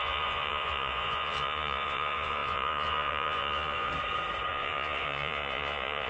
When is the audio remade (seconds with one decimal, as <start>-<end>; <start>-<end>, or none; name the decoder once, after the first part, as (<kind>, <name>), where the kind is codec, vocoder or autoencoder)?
0.0-3.9 (vocoder, Vocos); 4.5-6.1